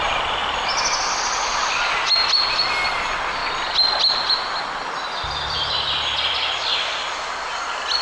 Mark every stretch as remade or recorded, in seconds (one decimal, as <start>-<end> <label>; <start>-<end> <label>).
0.0-8.0 recorded